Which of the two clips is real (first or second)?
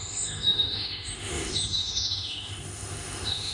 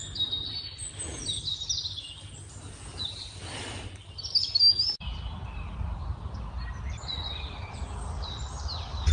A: second